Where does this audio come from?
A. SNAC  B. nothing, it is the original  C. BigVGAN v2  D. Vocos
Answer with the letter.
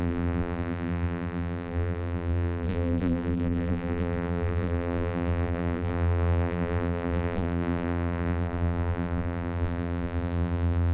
C